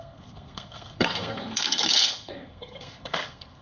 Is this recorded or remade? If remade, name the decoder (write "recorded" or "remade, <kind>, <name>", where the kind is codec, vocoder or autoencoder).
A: remade, codec, SNAC